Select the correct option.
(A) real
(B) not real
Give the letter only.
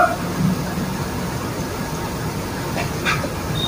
A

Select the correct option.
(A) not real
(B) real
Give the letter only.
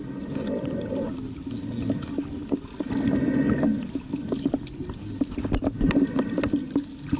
B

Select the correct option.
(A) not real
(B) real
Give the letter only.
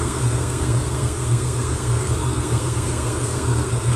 A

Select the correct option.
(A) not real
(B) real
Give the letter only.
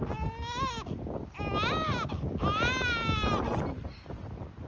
B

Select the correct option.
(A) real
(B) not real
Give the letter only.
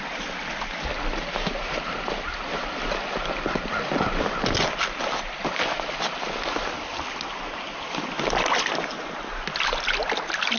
A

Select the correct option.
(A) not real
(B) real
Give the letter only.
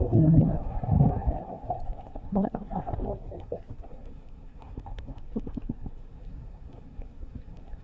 A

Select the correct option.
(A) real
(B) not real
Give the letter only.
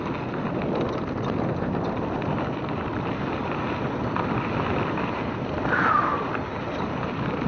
A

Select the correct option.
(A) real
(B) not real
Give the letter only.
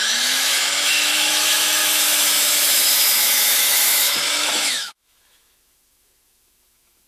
B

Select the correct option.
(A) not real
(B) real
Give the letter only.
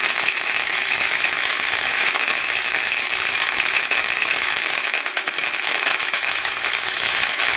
A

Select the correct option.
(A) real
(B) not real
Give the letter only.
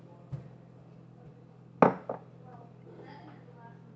A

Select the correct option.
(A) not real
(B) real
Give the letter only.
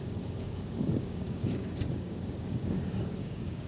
A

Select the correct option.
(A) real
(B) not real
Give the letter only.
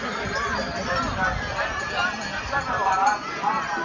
A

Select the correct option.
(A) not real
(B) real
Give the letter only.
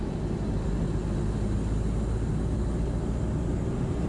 B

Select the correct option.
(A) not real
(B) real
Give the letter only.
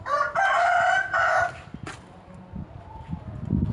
B